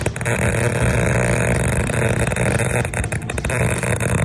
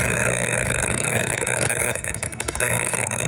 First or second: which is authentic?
first